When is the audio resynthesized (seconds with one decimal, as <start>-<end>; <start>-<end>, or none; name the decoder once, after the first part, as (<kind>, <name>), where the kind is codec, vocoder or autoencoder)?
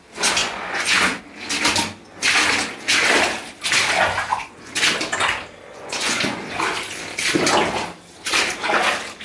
0.4-1.2 (vocoder, Vocos); 4.3-4.8; 5.7-6.4